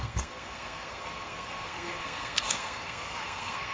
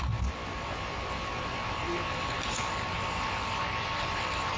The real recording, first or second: second